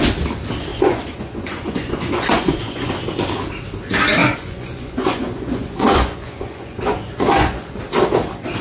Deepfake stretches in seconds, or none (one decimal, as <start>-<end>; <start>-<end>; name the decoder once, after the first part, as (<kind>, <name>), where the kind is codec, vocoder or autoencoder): 0.7-2.9 (vocoder, Vocos); 4.2-7.7